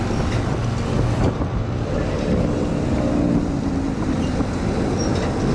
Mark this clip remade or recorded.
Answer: recorded